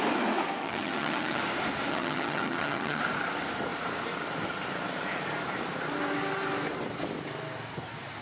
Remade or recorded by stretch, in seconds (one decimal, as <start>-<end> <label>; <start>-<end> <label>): 0.0-0.6 recorded; 0.6-1.4 remade; 1.4-1.9 recorded; 1.9-3.0 remade; 3.0-8.2 recorded